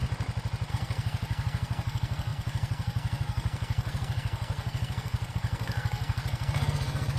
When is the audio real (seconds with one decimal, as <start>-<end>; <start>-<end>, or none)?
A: 0.0-0.7